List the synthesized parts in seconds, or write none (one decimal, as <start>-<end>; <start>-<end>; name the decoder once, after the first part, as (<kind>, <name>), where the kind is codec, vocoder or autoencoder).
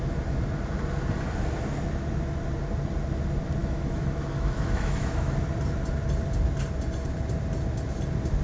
3.6-5.3 (autoencoder, DAC-VAE)